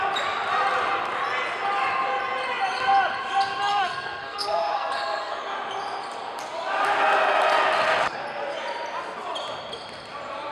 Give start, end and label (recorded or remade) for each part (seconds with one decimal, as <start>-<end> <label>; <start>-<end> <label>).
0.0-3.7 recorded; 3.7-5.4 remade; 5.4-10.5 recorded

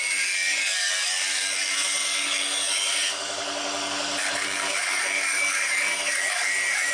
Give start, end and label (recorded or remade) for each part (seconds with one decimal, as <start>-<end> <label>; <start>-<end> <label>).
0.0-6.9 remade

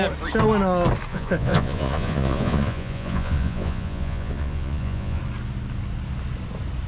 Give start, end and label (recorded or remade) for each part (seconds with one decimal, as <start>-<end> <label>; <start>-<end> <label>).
0.0-1.1 recorded; 1.1-5.2 remade; 5.2-6.9 recorded

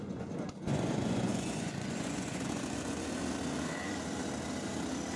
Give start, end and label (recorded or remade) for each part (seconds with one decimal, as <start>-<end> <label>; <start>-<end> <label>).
0.0-3.2 remade; 3.2-5.2 recorded

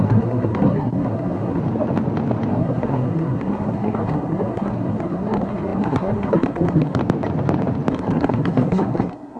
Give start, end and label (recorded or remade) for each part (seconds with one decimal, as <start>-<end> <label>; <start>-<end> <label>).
0.0-1.6 remade; 1.6-2.5 recorded; 2.5-7.0 remade; 7.0-7.9 recorded; 7.9-9.4 remade